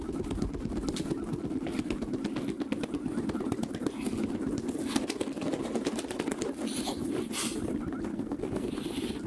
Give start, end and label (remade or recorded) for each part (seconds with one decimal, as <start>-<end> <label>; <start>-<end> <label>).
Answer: 0.0-8.1 recorded; 8.1-8.7 remade; 8.7-9.3 recorded